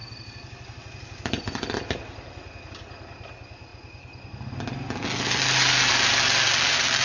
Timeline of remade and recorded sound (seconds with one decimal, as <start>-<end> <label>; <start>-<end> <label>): 0.0-7.0 recorded